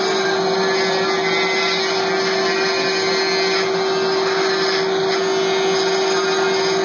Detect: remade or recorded recorded